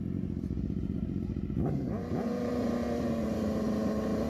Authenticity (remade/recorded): remade